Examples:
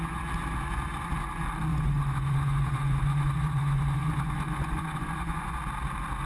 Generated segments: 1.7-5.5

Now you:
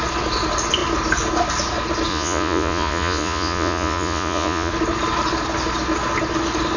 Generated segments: 2.1-4.7